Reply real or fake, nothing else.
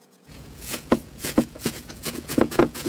fake